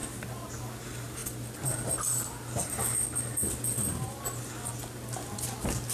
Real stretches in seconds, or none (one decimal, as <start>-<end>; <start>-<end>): 0.0-5.9

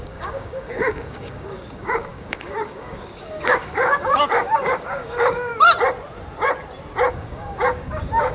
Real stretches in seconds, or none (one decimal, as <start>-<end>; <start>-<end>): 5.5-7.1

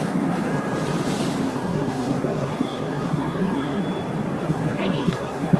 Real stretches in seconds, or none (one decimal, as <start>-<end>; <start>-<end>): 0.5-1.5; 3.8-4.4

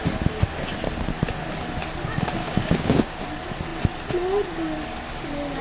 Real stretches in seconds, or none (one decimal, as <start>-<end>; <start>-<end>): 0.0-2.4; 3.2-5.6

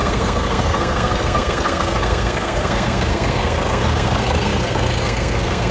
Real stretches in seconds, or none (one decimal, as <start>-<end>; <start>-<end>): none

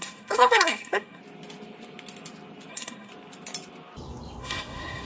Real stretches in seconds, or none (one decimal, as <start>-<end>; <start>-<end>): 1.2-2.7; 3.1-4.4

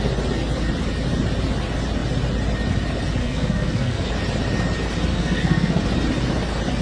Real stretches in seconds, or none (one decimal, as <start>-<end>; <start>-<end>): 0.0-3.2; 4.1-5.1; 5.8-6.8

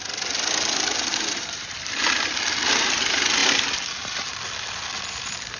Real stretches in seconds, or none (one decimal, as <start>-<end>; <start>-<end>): 0.0-1.1; 2.3-5.6